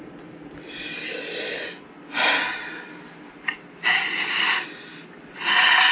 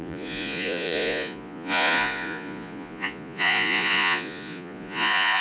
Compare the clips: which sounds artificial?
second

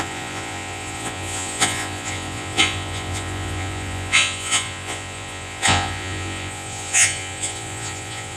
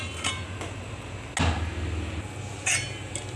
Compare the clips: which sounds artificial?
first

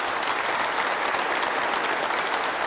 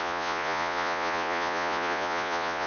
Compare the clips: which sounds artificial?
second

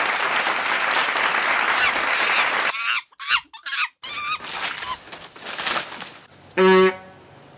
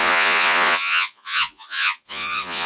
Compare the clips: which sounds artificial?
second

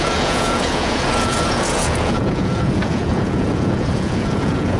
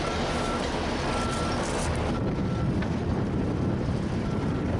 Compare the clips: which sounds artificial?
first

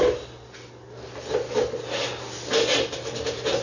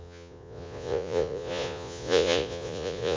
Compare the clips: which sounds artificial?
second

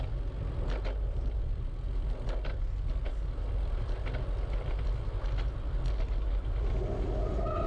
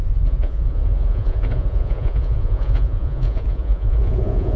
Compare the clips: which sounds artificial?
second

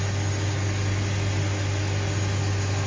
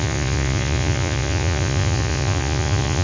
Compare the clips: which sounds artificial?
second